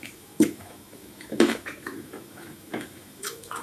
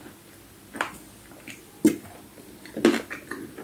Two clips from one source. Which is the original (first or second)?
second